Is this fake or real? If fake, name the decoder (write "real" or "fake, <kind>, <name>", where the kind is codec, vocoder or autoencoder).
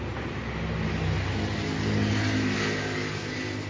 real